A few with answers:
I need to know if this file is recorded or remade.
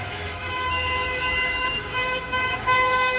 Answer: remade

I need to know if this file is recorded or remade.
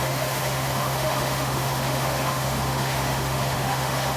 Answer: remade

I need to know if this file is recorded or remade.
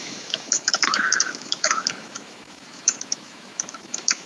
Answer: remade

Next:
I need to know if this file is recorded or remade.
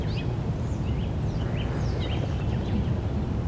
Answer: recorded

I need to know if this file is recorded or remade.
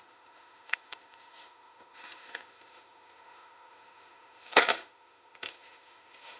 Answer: remade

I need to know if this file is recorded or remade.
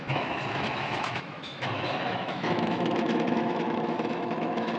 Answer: remade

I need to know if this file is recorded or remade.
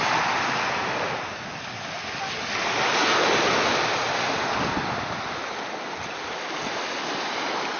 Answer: recorded